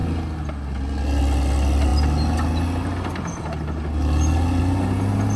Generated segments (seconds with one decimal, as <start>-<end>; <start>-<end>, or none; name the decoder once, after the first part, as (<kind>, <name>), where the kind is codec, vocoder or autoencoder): none